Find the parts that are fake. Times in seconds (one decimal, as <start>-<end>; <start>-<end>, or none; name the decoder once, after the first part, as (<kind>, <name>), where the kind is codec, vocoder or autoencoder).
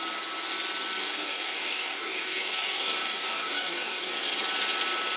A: 1.0-4.1 (codec, DAC)